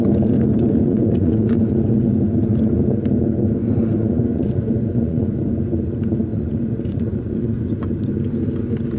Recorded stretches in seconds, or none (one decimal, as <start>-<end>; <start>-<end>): 0.0-0.5; 1.7-3.6; 5.5-6.3; 7.9-9.0